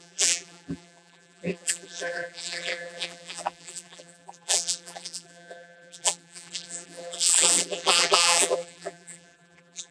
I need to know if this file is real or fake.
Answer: fake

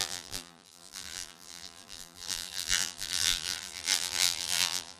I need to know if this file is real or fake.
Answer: fake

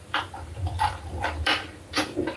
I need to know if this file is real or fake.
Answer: fake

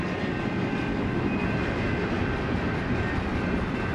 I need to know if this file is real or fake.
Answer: real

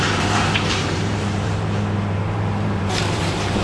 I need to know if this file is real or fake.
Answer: fake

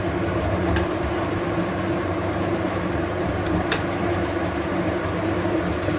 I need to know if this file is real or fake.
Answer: fake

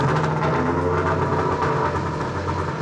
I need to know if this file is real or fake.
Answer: real